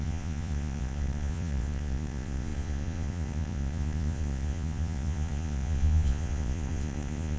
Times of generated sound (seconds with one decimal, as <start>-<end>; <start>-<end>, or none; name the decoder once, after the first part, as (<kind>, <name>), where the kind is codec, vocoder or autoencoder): 0.0-7.4 (vocoder, Vocos)